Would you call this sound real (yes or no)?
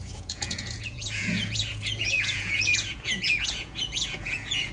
no